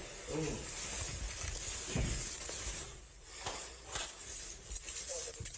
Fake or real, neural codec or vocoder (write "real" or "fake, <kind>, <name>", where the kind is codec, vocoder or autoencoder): real